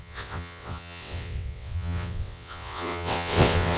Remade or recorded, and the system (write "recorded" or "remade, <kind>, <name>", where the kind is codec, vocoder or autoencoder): remade, vocoder, WaveNeXt